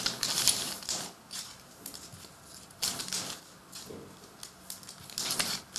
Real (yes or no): yes